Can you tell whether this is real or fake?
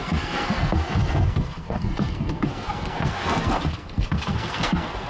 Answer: fake